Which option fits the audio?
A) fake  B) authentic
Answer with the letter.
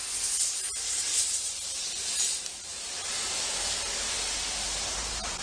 B